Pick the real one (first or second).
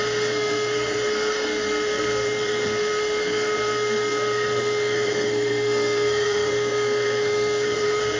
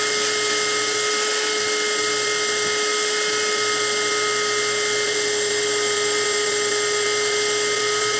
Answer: second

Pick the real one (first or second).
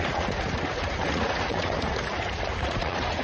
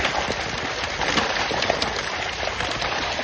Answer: second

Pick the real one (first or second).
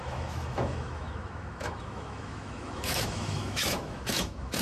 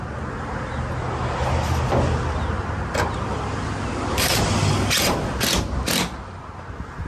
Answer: second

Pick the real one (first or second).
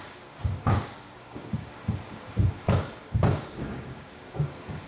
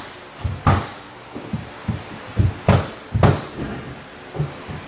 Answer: second